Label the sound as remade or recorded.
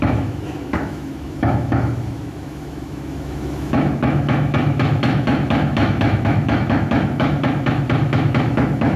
remade